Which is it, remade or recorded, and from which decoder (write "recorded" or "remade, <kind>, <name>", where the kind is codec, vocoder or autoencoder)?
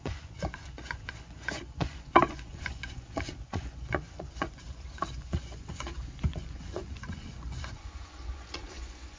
remade, vocoder, Vocos